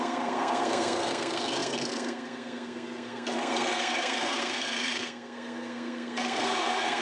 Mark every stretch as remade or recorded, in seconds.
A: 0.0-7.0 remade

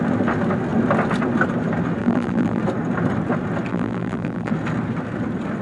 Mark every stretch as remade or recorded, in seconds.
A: 0.0-2.0 recorded; 2.0-2.6 remade; 2.6-3.7 recorded; 3.7-4.5 remade; 4.5-5.6 recorded

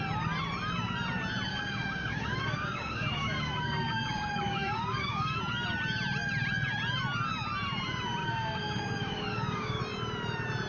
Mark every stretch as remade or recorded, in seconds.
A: 0.0-1.5 recorded; 1.5-5.4 remade; 5.4-8.2 recorded; 8.2-9.8 remade; 9.8-10.7 recorded